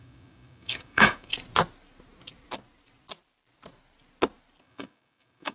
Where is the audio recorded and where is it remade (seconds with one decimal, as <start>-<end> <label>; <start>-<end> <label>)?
0.0-1.3 remade; 1.3-4.6 recorded; 4.6-5.5 remade